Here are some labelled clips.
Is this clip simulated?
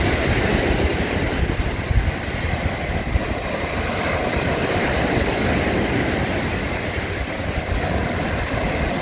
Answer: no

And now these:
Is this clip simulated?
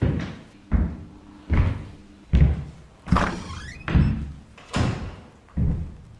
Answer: no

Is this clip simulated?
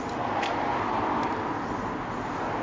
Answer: no